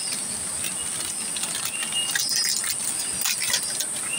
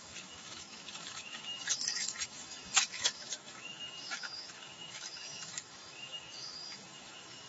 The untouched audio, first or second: first